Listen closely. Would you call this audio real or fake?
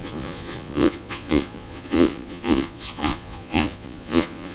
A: fake